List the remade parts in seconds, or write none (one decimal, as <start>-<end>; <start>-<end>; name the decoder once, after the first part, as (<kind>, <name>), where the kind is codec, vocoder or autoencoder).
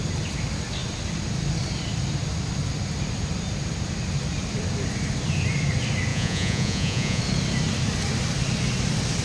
6.1-7.2 (vocoder, Vocos)